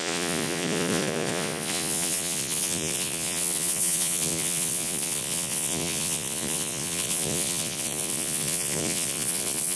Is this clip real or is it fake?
fake